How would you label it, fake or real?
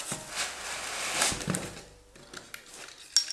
real